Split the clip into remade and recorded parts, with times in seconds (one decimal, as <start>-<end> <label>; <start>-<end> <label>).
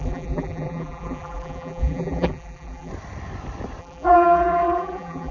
0.0-2.9 remade; 2.9-3.8 recorded; 3.8-5.3 remade